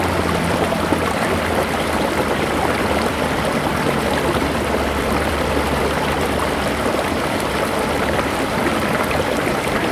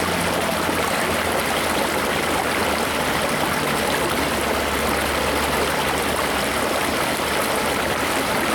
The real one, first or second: second